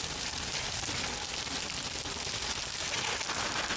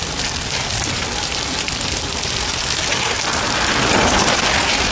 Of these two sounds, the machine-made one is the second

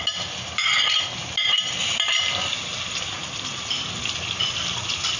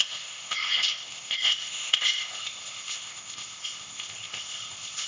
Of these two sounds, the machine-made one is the second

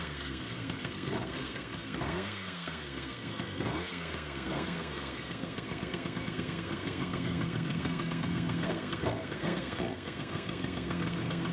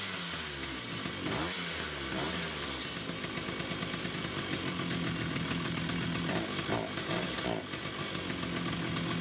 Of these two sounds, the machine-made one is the first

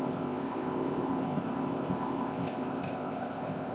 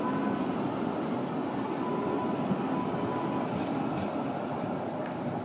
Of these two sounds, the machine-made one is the first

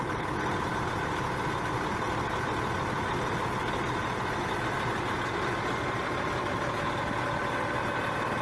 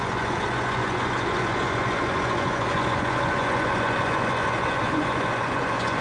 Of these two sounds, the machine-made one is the second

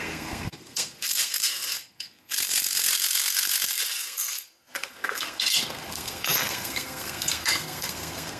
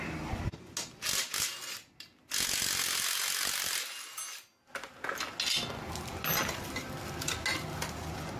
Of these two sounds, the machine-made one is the first